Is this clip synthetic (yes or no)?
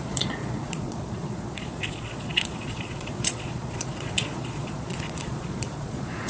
yes